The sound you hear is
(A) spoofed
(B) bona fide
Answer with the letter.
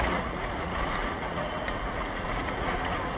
A